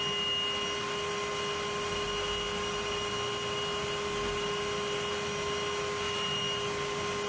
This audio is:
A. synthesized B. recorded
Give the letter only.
B